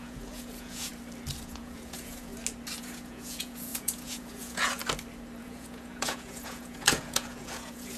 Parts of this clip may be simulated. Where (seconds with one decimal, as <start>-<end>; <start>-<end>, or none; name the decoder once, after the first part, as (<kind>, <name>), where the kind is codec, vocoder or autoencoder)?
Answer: 0.0-0.9 (vocoder, Vocos); 1.4-2.3; 2.8-4.8; 5.4-8.0

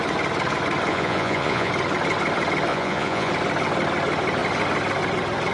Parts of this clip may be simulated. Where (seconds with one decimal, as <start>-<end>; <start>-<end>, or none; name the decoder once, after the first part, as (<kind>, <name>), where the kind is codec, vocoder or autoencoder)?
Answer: 0.9-1.7 (vocoder, Vocos); 2.7-3.3